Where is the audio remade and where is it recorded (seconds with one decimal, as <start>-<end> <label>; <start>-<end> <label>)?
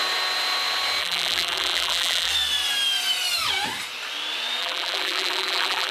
0.0-1.0 recorded; 1.0-2.3 remade; 2.3-4.6 recorded; 4.6-5.9 remade